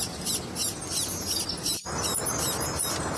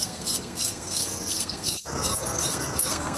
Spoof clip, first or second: second